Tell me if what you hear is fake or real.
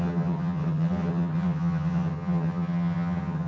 fake